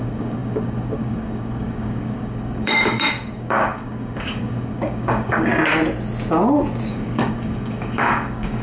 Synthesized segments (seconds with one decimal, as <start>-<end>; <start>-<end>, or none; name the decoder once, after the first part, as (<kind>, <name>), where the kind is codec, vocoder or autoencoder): 0.0-5.5 (codec, DAC); 6.9-8.6